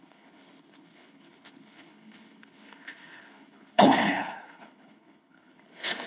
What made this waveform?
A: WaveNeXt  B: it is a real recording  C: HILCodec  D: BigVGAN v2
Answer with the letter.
C